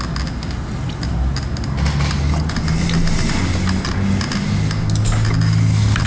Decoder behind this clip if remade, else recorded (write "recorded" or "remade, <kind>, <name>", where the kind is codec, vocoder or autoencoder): recorded